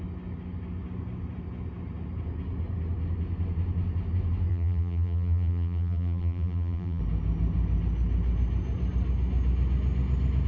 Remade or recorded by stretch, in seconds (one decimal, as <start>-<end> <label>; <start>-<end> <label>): 0.0-4.5 recorded; 4.5-7.0 remade; 7.0-10.5 recorded